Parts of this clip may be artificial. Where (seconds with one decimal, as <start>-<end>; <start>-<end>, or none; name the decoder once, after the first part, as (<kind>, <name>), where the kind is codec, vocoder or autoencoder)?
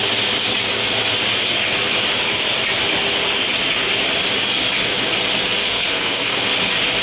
5.6-6.4 (codec, SNAC)